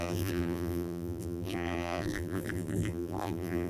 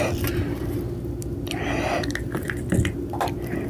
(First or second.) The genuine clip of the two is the second